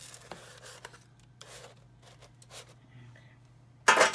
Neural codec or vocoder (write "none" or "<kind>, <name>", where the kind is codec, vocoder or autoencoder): none